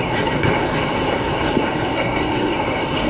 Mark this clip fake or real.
fake